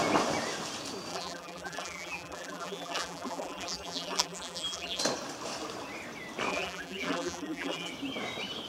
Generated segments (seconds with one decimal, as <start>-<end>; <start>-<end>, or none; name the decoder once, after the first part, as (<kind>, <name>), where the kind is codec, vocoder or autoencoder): 1.1-5.0 (vocoder, BigVGAN v2); 6.5-7.9